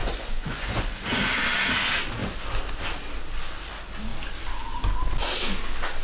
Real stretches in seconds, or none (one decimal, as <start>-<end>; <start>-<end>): 1.4-6.0